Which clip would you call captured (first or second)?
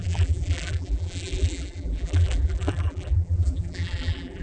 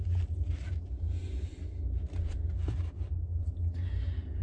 second